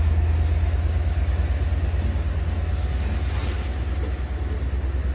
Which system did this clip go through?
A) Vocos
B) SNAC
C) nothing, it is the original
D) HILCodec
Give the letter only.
C